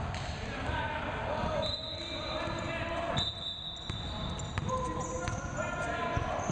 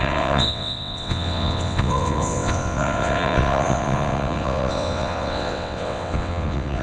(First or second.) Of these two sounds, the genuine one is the first